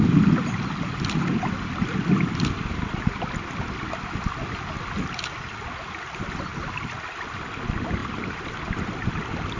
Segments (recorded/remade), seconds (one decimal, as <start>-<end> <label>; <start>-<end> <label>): 0.0-8.0 recorded; 8.0-9.2 remade; 9.2-9.6 recorded